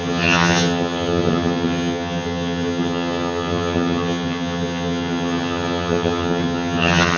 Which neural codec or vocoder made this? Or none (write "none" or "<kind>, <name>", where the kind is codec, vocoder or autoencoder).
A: vocoder, HiFi-GAN